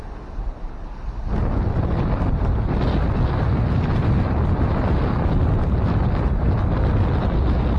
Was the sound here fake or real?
real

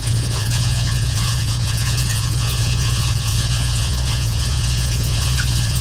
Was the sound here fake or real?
fake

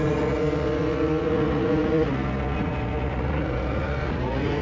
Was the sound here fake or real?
fake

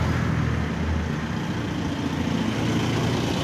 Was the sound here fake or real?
real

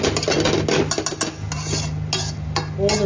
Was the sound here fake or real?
real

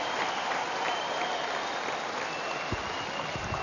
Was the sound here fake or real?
real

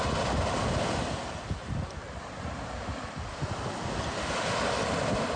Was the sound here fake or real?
real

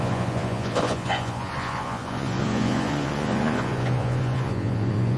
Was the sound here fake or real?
fake